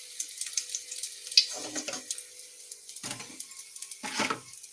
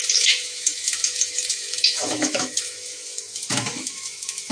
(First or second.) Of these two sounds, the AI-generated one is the second